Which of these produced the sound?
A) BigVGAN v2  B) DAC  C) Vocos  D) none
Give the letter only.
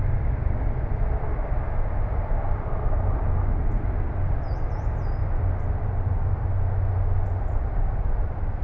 D